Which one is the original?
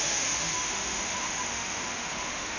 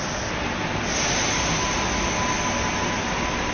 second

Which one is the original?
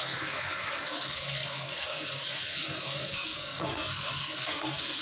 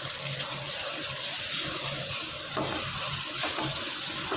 second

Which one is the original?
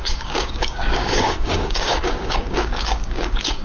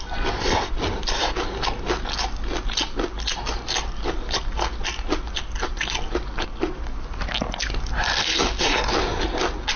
second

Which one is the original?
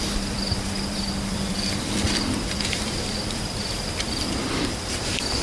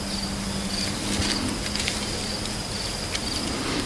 second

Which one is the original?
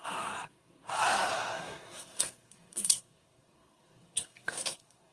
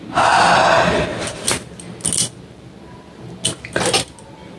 second